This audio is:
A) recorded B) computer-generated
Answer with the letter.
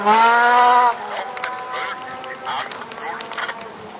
A